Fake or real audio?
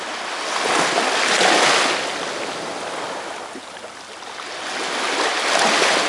real